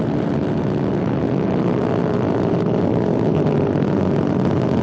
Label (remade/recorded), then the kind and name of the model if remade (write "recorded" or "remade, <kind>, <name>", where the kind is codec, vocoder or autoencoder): recorded